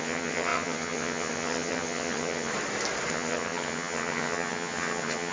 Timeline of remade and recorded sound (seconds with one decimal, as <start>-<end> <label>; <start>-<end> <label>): 0.0-2.5 remade; 2.5-3.1 recorded; 3.1-5.3 remade